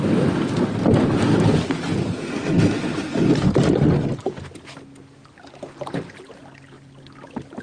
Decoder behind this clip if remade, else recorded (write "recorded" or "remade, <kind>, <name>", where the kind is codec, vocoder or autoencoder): recorded